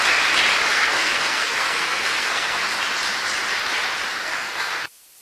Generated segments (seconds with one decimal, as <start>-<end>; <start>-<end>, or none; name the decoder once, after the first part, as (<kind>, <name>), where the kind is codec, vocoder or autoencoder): 0.7-2.6 (codec, SNAC); 4.2-5.2